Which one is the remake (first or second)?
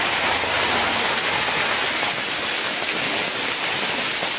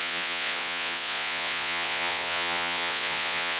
second